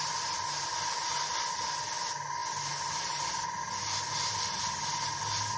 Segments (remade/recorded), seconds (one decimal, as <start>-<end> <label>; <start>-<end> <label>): 0.0-5.6 recorded